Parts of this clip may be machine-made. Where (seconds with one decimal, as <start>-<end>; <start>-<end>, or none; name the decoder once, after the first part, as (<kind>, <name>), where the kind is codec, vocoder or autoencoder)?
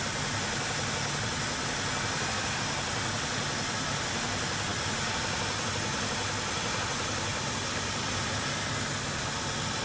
none